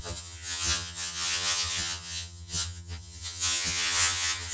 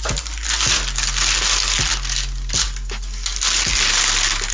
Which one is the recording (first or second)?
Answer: second